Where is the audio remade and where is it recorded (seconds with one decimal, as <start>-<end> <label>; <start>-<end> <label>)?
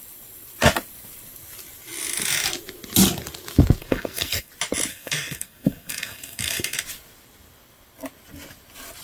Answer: 0.0-3.8 recorded; 3.8-4.5 remade; 4.5-4.9 recorded; 4.9-6.8 remade; 6.8-9.0 recorded